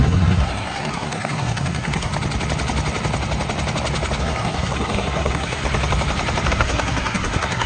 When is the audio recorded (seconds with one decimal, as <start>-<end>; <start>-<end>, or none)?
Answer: 2.1-4.2; 5.6-6.5